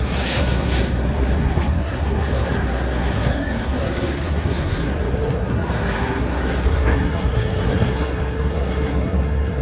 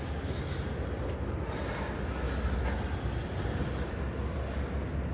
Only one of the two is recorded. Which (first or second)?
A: second